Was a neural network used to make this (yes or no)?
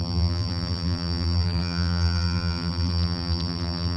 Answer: yes